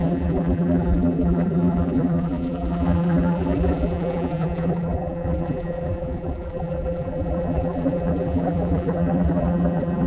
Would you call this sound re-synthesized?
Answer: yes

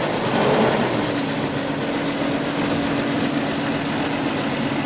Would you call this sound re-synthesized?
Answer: no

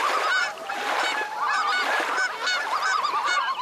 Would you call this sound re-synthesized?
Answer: yes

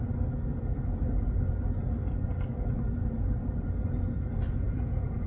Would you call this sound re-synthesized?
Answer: no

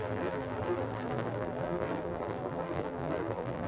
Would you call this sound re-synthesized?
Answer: yes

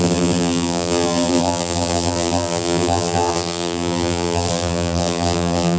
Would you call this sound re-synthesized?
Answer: yes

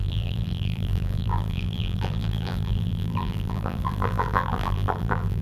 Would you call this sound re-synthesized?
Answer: yes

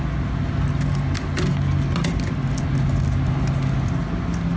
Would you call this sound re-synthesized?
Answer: no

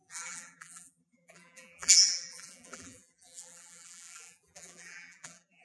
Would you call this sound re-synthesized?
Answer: yes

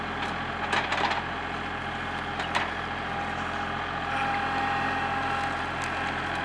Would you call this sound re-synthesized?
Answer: no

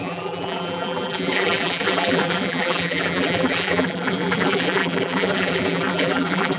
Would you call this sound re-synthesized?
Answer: yes